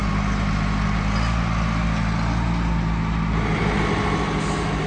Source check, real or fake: real